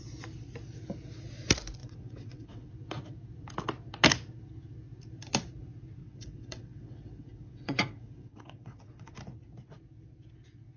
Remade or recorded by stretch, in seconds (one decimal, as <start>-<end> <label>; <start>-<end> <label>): 0.0-1.8 recorded; 1.8-2.7 remade; 2.7-6.0 recorded; 6.0-9.1 remade; 9.1-10.8 recorded